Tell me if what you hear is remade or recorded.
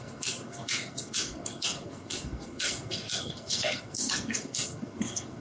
remade